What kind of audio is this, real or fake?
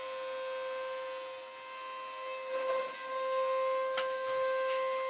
real